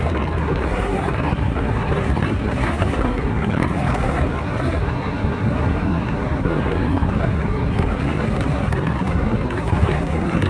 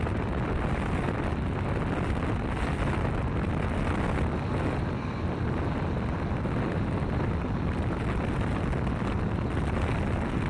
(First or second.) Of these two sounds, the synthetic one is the first